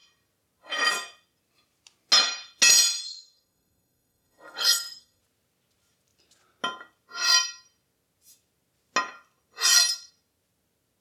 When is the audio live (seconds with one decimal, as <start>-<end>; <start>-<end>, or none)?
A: 0.0-3.0; 5.2-11.0